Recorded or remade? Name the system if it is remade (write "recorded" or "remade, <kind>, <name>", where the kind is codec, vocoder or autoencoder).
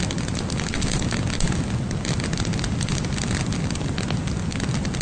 recorded